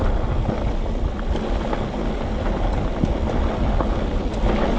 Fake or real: real